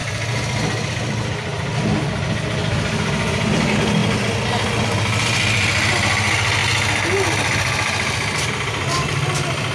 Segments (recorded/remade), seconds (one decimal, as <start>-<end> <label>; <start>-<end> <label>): 0.0-9.7 recorded